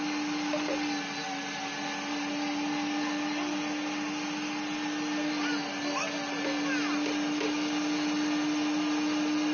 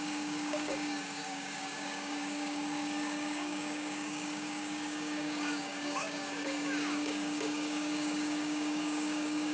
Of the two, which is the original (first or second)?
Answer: first